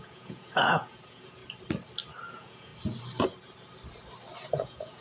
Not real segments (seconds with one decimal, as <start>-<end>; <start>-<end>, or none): 0.0-1.4; 2.3-2.7; 4.5-5.0